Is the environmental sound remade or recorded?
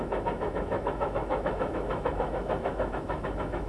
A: remade